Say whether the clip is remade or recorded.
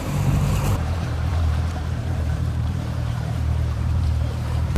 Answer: remade